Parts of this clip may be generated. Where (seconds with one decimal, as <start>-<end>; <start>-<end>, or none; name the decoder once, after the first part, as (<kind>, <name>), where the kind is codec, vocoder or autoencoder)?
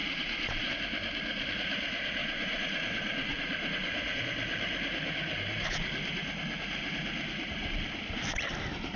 0.0-0.7 (vocoder, Vocos); 2.2-4.2